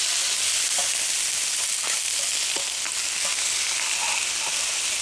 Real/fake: real